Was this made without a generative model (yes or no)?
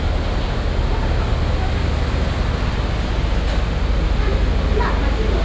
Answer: yes